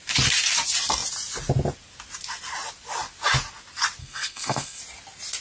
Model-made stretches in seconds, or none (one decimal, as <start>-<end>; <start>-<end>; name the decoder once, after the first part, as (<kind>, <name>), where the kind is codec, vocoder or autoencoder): 4.0-4.8 (codec, SNAC)